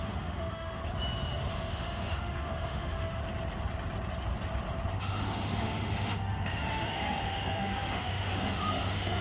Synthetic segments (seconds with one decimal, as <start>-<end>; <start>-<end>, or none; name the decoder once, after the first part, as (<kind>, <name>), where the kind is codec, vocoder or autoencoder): 0.0-0.8 (autoencoder, DAC-VAE); 1.5-3.2; 5.0-9.2